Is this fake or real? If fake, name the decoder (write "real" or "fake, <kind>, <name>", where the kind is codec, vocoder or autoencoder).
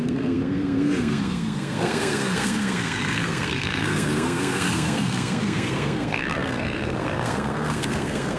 fake, codec, SNAC